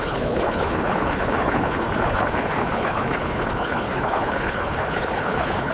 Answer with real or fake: fake